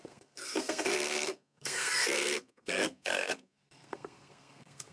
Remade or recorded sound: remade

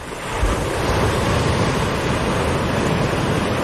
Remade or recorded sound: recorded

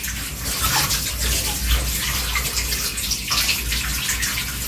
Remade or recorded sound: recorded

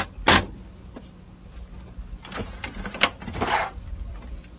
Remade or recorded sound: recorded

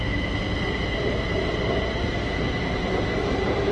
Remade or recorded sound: recorded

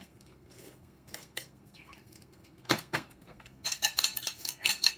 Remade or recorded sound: remade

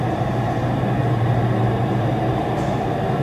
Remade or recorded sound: remade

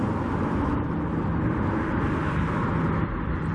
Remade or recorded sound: recorded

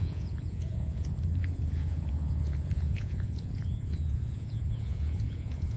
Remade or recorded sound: remade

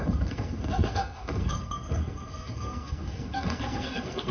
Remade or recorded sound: remade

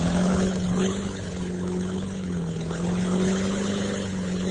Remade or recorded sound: remade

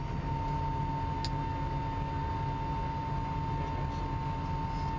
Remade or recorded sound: recorded